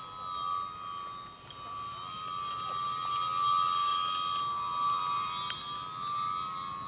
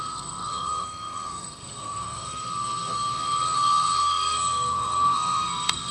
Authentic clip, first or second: first